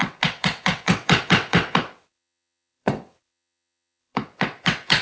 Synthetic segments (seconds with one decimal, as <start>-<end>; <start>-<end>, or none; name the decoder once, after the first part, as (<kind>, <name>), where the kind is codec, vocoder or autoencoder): 0.0-5.0 (vocoder, WaveNeXt)

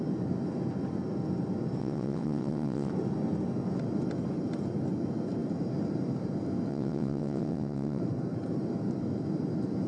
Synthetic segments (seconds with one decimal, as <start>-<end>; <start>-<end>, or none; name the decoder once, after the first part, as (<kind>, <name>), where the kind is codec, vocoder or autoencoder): 1.8-2.9 (vocoder, WaveNeXt); 6.7-8.0

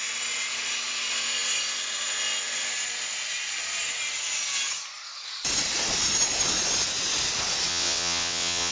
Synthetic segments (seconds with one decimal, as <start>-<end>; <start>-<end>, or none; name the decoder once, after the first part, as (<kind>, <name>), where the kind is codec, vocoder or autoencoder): 7.7-8.7 (vocoder, WaveNeXt)

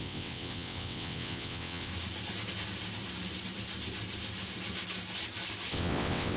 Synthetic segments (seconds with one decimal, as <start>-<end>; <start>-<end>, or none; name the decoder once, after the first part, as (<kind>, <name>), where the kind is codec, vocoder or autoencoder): 0.0-1.9 (vocoder, WaveNeXt); 5.7-6.4

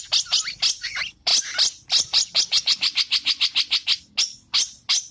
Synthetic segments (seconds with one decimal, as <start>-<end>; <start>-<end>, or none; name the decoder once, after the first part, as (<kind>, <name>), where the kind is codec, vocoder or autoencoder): none

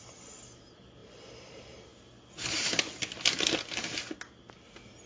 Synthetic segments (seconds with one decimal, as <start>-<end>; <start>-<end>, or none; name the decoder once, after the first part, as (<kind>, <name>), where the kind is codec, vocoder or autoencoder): none

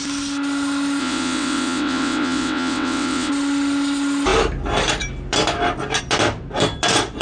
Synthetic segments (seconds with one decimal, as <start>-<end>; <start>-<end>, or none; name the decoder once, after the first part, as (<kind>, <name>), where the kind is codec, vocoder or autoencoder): 1.0-3.3 (vocoder, WaveNeXt)

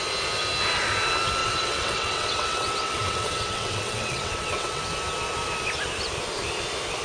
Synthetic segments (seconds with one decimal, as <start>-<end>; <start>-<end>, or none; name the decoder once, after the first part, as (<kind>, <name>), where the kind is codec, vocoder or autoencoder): 1.4-4.8 (vocoder, WaveNeXt)